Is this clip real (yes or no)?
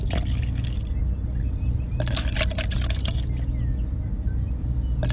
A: yes